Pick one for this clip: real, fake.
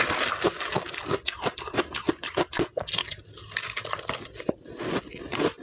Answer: real